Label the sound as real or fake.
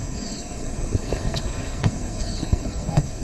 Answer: fake